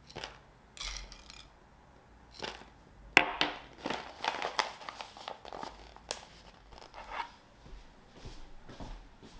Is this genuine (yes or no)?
yes